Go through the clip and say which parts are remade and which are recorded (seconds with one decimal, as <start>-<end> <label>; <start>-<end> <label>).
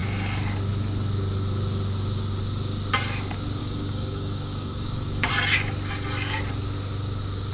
0.0-3.6 recorded; 3.6-5.3 remade; 5.3-7.5 recorded